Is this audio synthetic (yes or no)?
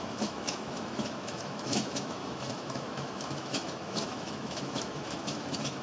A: yes